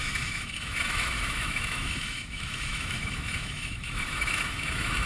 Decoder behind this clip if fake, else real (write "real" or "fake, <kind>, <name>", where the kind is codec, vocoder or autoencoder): fake, autoencoder, DAC-VAE